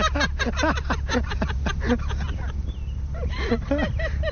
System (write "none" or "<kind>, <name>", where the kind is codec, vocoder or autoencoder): none